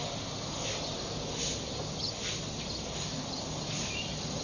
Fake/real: real